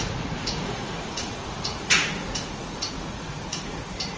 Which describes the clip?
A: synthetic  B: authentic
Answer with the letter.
A